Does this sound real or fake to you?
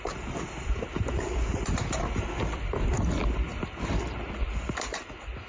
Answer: real